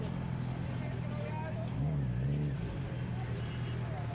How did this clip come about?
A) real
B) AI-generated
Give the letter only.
A